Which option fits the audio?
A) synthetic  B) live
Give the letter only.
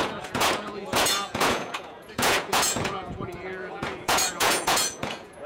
A